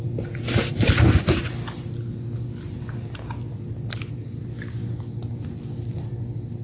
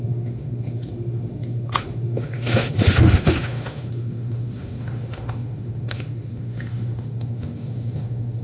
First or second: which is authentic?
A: first